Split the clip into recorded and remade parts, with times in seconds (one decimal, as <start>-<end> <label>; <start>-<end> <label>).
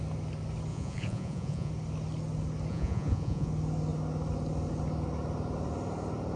0.0-0.7 recorded; 0.7-1.7 remade; 1.7-2.7 recorded; 2.7-3.5 remade; 3.5-6.4 recorded